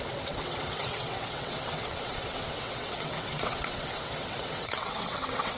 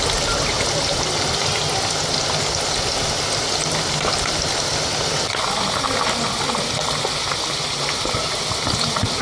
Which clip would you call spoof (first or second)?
first